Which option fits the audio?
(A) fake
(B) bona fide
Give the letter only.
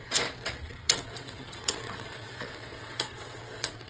A